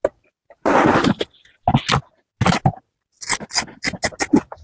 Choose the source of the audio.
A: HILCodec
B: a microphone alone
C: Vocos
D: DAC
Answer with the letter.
B